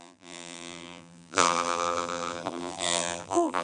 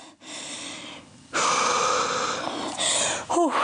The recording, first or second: second